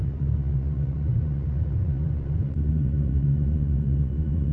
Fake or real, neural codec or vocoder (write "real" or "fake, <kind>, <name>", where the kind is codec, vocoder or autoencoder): fake, vocoder, Vocos